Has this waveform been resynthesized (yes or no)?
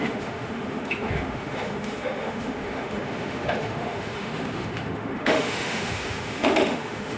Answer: yes